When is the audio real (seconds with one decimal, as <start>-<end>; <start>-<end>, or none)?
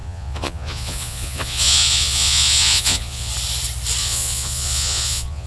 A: 3.3-4.0